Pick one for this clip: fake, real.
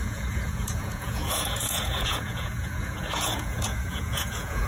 fake